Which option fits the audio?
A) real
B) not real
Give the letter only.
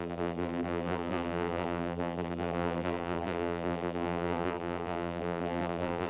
B